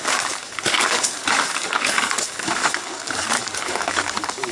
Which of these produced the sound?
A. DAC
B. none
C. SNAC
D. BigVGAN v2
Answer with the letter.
A